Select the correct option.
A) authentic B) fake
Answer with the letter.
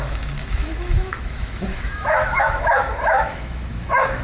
B